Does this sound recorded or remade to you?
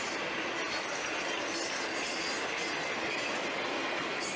recorded